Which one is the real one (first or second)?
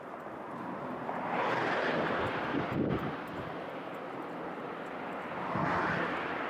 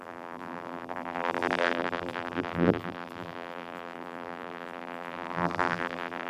first